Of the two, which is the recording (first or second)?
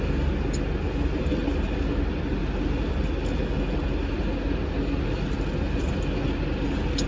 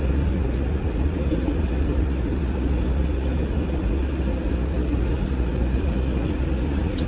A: first